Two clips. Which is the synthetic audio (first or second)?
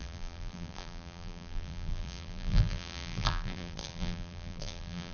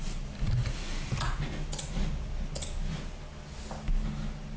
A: first